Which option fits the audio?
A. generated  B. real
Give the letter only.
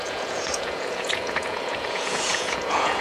A